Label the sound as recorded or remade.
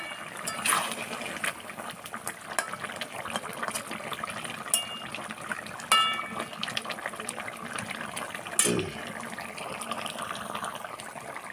recorded